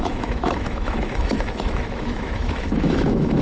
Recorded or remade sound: remade